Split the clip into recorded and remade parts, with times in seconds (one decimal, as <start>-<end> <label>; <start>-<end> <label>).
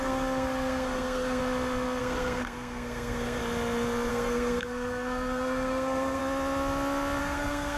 0.0-1.4 remade; 1.4-2.0 recorded; 2.0-3.4 remade; 3.4-4.1 recorded; 4.1-6.2 remade; 6.2-7.2 recorded; 7.2-7.8 remade